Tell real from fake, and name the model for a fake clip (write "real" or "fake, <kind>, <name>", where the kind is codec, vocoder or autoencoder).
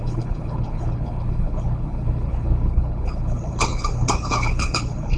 fake, codec, HILCodec